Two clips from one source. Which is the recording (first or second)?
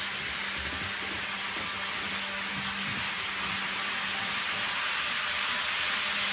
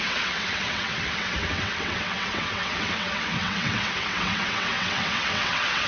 first